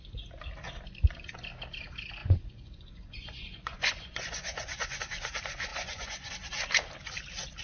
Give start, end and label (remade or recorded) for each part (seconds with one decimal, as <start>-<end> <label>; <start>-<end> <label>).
0.0-2.2 recorded; 2.2-5.0 remade; 5.0-5.7 recorded; 5.7-6.3 remade; 6.3-7.6 recorded